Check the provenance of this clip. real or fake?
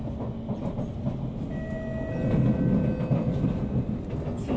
real